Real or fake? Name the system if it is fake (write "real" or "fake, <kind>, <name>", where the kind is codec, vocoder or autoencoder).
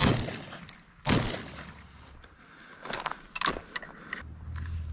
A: real